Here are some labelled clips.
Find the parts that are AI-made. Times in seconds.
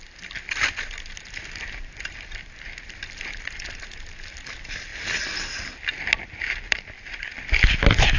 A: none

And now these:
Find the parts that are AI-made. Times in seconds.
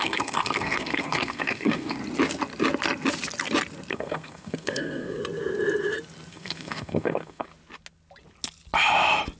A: 0.0-2.0; 3.9-5.2; 6.3-7.5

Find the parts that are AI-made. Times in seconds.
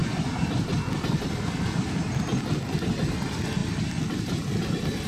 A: 0.0-2.9; 3.6-5.1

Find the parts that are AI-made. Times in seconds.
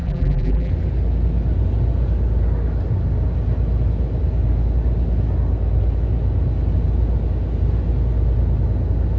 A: 0.0-0.7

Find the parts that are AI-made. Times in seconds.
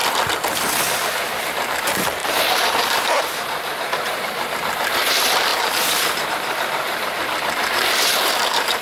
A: 1.5-8.8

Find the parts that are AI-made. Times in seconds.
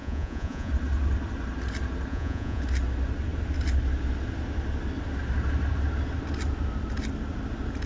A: 0.0-0.7; 2.1-2.6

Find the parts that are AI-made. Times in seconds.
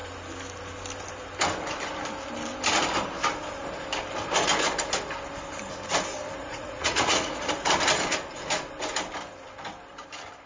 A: 6.4-7.5